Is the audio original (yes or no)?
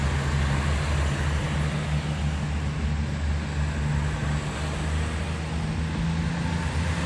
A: yes